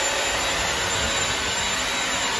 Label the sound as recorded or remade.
recorded